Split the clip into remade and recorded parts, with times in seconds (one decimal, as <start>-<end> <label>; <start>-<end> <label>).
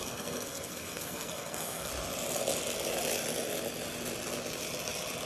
0.0-1.9 remade; 1.9-5.3 recorded